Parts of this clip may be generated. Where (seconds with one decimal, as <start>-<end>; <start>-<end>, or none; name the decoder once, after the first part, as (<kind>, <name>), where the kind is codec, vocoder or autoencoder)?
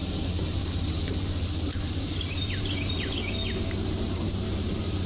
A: 0.0-3.1 (vocoder, BigVGAN v2); 4.0-5.1